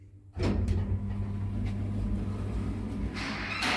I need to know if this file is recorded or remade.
recorded